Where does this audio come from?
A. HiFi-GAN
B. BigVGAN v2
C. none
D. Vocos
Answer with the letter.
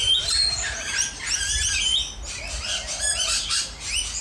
C